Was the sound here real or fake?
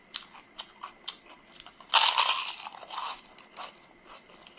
real